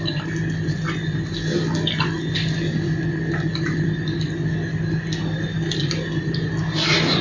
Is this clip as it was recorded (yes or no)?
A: yes